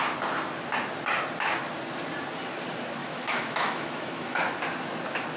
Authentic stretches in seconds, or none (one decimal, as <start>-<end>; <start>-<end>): 0.0-3.0; 4.5-5.4